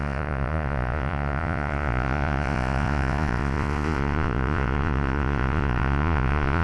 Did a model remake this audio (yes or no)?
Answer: yes